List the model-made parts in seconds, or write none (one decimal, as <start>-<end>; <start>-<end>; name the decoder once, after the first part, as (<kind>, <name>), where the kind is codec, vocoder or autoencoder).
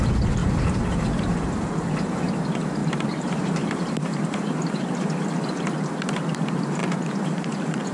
0.4-1.7 (vocoder, BigVGAN v2); 2.8-4.8